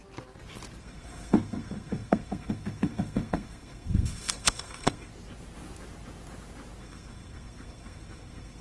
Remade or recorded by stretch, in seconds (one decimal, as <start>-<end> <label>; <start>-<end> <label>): 0.0-0.8 recorded; 0.8-5.1 remade; 5.1-6.8 recorded; 6.8-8.6 remade